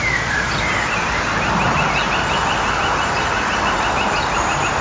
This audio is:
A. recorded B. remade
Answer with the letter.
B